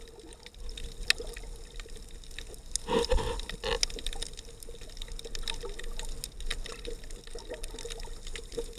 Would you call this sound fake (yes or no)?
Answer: no